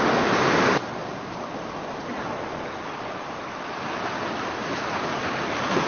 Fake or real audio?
fake